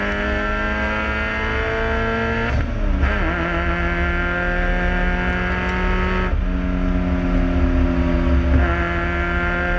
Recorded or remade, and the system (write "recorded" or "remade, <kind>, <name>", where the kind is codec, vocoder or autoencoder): recorded